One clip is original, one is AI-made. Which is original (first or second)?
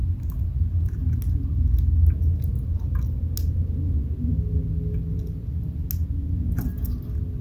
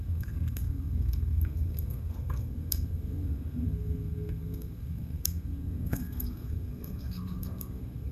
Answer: first